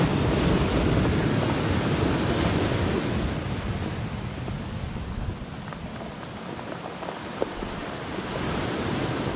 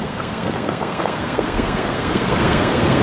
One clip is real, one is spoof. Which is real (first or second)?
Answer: first